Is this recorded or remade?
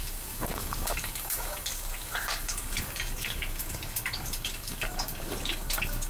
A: remade